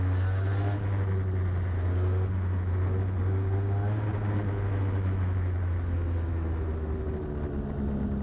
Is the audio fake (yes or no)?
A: no